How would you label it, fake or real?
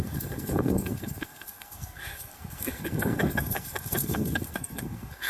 fake